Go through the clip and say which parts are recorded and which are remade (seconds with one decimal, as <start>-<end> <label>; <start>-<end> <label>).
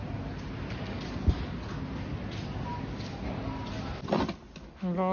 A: 0.0-5.1 recorded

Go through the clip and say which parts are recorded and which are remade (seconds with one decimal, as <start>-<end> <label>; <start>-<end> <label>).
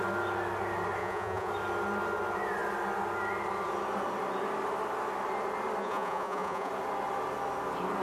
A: 0.0-1.0 recorded; 1.0-1.5 remade; 1.5-5.8 recorded; 5.8-6.7 remade; 6.7-8.0 recorded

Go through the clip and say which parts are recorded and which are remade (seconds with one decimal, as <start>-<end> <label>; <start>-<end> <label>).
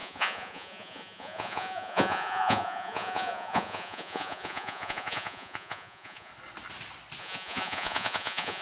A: 0.0-6.3 remade; 6.3-7.2 recorded; 7.2-8.6 remade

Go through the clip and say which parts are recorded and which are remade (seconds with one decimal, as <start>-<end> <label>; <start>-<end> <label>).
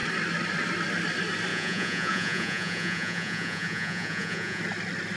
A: 0.0-1.5 recorded; 1.5-4.6 remade; 4.6-5.2 recorded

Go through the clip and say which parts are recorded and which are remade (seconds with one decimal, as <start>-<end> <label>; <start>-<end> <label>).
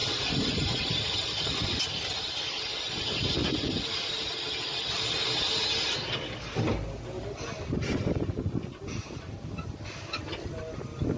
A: 0.0-11.2 recorded